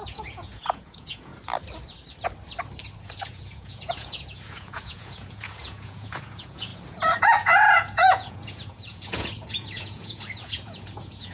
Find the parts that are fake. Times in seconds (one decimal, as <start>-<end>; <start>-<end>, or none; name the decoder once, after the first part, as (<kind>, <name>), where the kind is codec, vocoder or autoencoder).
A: 0.0-1.3 (vocoder, Vocos); 3.0-6.7; 7.2-11.3